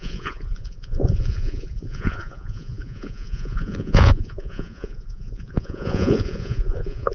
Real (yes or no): no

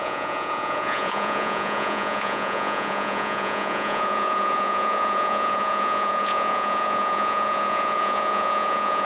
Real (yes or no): no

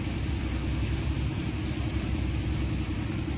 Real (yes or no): yes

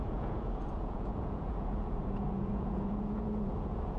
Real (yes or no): no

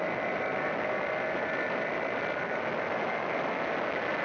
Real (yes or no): yes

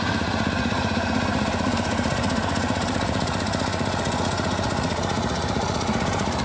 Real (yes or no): no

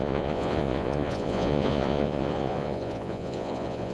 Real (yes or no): no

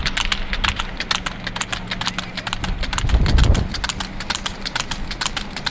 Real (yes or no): yes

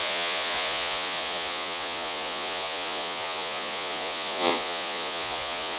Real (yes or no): no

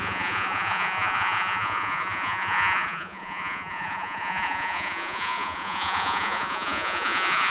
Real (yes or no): no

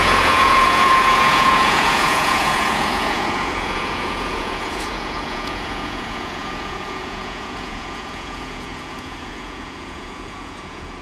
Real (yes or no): no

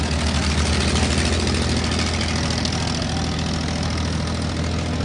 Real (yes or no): yes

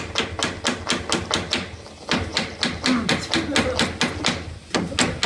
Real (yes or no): yes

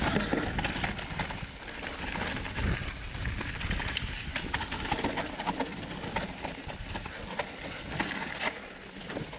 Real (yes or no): yes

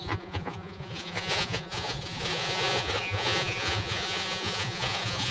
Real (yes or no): no